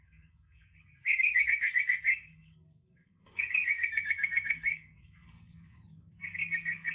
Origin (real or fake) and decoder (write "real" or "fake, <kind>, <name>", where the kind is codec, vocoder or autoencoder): fake, codec, SNAC